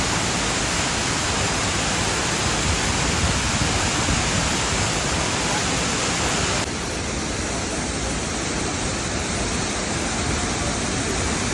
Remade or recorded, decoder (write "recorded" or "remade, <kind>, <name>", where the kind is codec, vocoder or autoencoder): recorded